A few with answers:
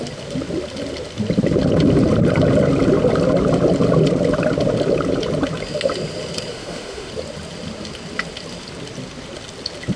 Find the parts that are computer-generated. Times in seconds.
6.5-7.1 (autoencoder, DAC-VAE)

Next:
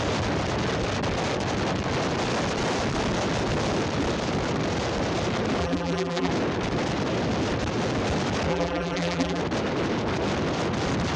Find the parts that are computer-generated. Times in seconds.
5.6-6.3 (vocoder, BigVGAN v2); 8.5-9.4

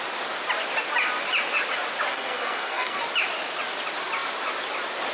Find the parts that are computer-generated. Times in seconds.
2.1-3.0 (codec, SNAC)

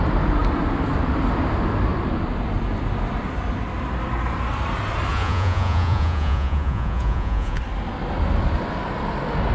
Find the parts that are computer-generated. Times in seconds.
5.1-7.6 (vocoder, Vocos)

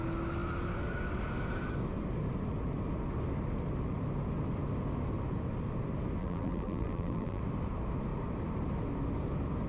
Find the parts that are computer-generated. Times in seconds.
6.2-7.4 (vocoder, BigVGAN v2)

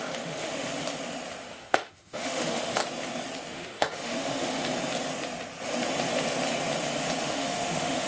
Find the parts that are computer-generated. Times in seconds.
0.0-0.7 (autoencoder, DAC-VAE); 1.4-2.8; 3.5-4.6; 7.2-8.1

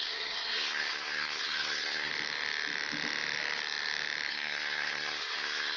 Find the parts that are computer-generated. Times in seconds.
0.0-2.1 (codec, SNAC); 4.3-5.8

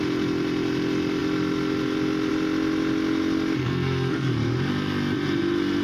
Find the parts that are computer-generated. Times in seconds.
3.6-4.3 (codec, SNAC)